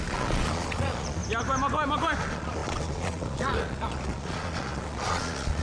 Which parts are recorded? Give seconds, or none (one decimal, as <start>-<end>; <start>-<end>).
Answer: 1.2-2.2